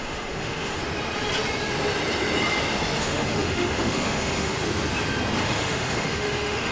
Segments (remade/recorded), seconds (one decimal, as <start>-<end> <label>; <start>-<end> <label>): 0.0-0.8 remade; 0.8-3.0 recorded; 3.0-4.6 remade; 4.6-5.4 recorded; 5.4-6.7 remade